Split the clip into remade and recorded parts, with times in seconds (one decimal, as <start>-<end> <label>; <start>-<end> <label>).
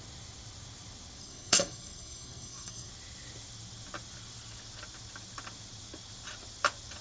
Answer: 0.0-1.2 recorded; 1.2-2.9 remade; 2.9-7.0 recorded